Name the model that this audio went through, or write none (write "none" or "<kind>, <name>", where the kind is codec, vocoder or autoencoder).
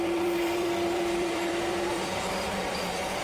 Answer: vocoder, BigVGAN v2